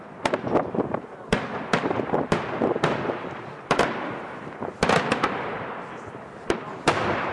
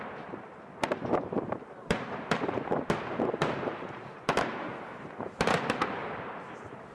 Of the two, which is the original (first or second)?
first